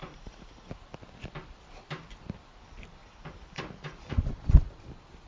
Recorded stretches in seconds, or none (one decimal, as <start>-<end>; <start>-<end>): 0.7-3.0; 3.6-5.3